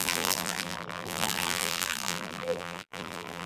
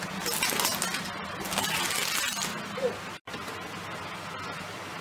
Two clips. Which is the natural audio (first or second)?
second